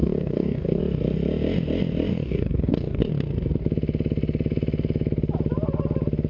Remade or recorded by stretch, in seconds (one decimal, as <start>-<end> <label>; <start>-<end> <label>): 0.0-0.8 remade; 0.8-2.1 recorded; 2.1-3.1 remade; 3.1-6.3 recorded